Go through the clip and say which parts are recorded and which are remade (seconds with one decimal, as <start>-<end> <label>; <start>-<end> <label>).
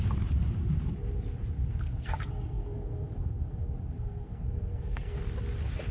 0.0-1.7 recorded; 1.7-5.2 remade; 5.2-5.9 recorded